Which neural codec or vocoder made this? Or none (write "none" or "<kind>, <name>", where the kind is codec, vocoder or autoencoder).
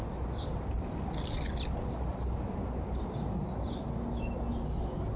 none